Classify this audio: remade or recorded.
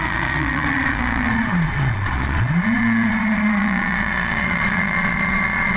remade